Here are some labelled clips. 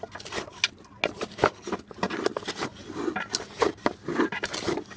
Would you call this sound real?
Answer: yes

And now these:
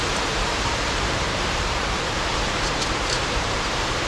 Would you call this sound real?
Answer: no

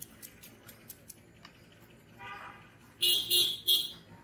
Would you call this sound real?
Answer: yes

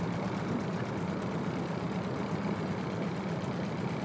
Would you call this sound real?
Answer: no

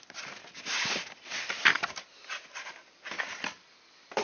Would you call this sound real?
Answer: no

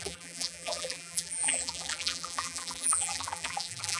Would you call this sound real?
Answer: no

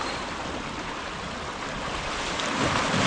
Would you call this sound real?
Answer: no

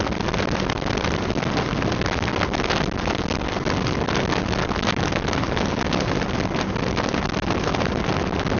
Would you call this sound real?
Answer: yes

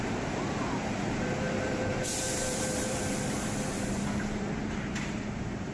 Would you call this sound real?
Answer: no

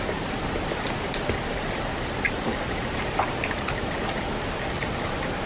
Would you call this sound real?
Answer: no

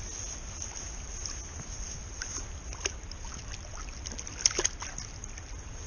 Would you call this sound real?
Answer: yes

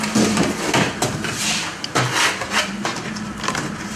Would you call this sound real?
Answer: yes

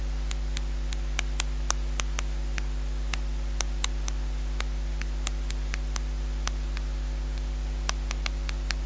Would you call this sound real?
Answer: yes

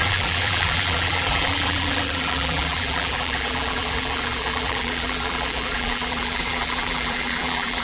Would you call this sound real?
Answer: no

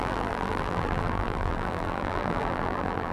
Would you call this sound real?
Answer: no